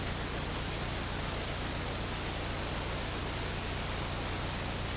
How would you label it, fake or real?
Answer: real